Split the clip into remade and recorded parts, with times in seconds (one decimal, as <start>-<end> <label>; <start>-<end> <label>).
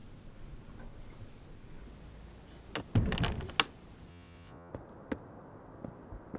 0.0-4.1 recorded; 4.1-4.7 remade; 4.7-6.4 recorded